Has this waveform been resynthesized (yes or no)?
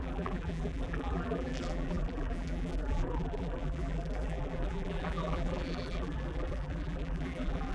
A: yes